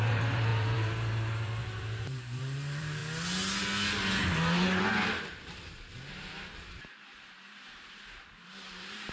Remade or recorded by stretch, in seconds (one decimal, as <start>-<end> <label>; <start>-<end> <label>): 0.0-3.0 remade; 3.0-7.5 recorded; 7.5-9.1 remade